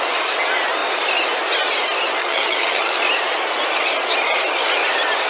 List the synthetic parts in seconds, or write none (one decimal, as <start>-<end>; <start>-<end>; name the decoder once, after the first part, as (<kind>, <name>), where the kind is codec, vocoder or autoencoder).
2.2-2.9 (vocoder, HiFi-GAN)